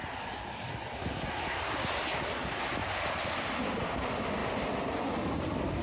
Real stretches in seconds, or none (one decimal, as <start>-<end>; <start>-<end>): 0.0-5.8